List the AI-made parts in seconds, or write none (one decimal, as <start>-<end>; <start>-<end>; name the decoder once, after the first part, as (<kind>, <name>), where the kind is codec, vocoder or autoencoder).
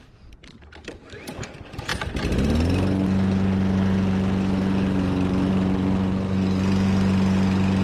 none